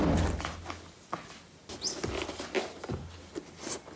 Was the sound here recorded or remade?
recorded